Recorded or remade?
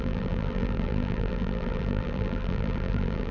remade